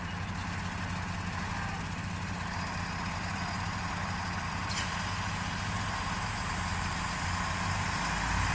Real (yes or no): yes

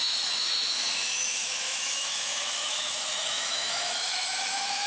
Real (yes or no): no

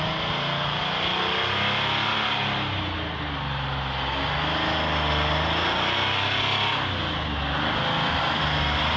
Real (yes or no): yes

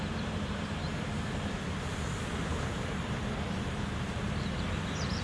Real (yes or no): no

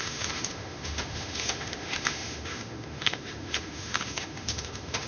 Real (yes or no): no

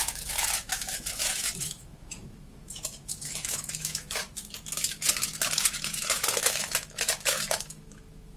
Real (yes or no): no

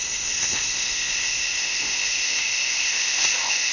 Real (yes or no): no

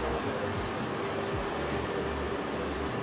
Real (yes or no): yes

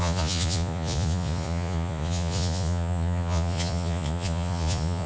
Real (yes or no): no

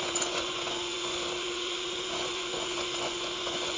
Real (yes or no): no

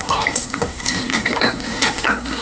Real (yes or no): no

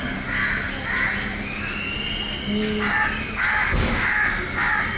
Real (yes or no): yes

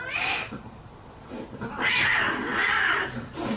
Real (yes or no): no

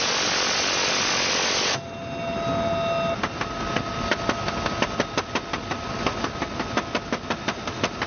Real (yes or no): yes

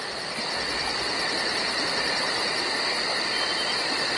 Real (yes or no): yes